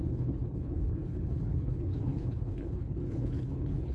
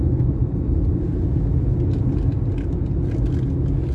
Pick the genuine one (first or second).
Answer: second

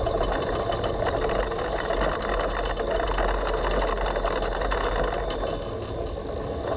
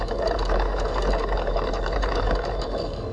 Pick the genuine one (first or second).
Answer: first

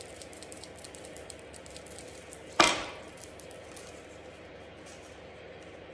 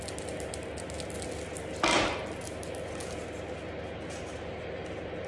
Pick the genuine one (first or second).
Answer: second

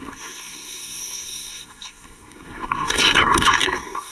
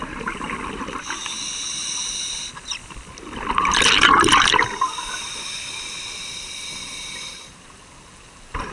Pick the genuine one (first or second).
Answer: second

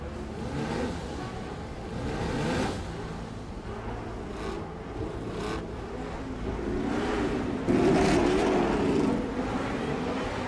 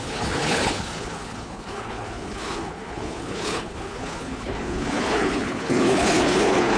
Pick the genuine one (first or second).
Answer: first